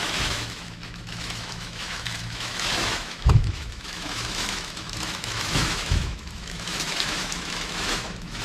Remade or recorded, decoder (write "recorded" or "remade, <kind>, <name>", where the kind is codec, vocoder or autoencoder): remade, autoencoder, DAC-VAE